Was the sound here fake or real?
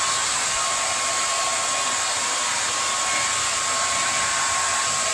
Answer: real